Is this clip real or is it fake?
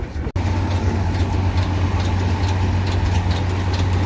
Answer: real